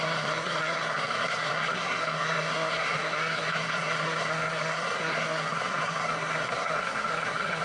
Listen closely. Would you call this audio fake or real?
fake